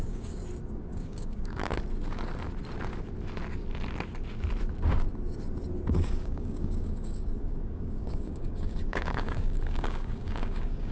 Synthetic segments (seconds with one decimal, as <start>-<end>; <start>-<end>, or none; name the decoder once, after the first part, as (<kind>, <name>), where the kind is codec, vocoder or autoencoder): 0.0-0.4 (codec, DAC); 0.9-1.7; 5.9-10.9